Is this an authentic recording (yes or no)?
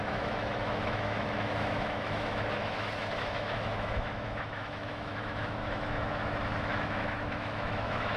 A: no